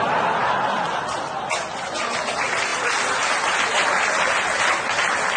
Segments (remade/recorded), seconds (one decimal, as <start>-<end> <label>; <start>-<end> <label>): 0.0-5.4 recorded